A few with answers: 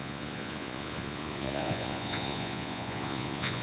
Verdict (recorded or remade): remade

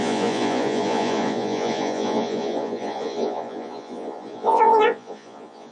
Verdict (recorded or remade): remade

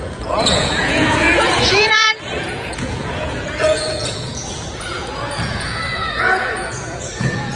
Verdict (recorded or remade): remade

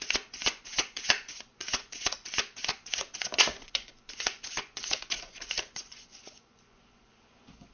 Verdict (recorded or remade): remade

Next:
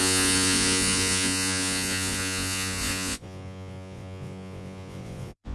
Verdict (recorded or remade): remade